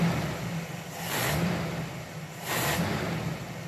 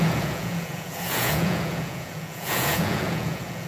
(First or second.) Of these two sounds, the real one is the first